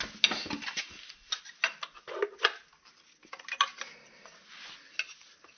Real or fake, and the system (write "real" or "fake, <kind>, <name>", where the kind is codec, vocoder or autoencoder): real